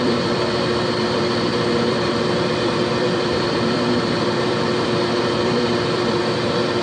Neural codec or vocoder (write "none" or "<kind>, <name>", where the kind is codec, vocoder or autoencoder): vocoder, BigVGAN v2